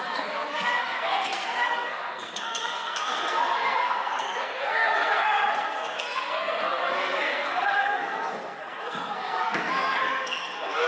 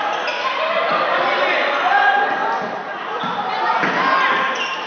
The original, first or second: second